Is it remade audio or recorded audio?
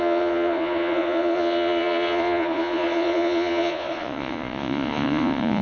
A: remade